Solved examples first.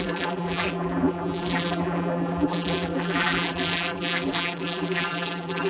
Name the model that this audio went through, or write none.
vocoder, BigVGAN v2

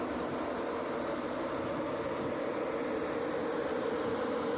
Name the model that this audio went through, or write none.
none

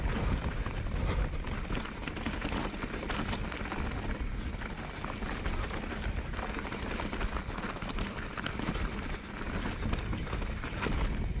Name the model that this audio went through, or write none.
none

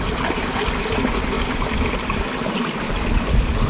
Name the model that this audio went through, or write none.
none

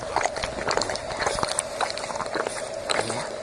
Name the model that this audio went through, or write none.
none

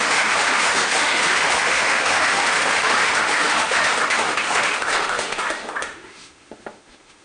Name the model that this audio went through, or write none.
autoencoder, DAC-VAE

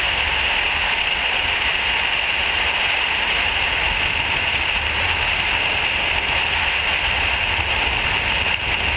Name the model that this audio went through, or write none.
none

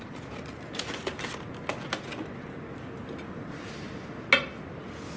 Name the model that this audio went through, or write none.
none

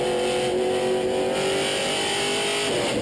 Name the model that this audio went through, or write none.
none